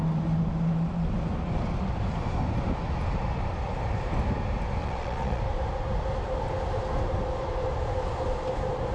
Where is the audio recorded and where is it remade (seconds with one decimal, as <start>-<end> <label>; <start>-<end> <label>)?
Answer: 0.0-4.8 recorded; 4.8-5.4 remade; 5.4-8.9 recorded